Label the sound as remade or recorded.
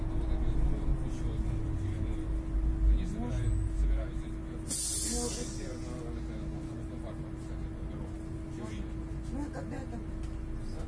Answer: recorded